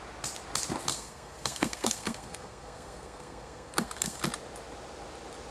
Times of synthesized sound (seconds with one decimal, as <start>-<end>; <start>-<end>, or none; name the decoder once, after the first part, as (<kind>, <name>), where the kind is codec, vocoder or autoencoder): 0.9-4.2 (codec, SNAC)